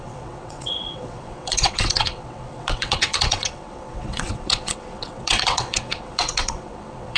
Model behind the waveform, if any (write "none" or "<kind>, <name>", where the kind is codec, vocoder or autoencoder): vocoder, WaveNeXt